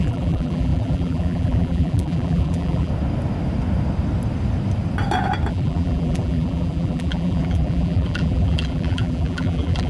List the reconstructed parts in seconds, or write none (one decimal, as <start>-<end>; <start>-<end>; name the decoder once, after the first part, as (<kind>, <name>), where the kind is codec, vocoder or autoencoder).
0.0-2.9 (vocoder, BigVGAN v2); 5.5-9.9